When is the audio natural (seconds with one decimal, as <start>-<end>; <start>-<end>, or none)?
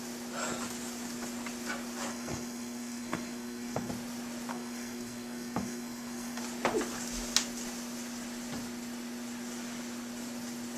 0.0-2.1; 3.9-4.5; 6.4-10.8